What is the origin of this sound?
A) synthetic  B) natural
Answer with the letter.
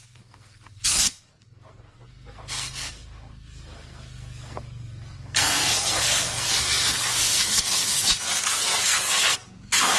A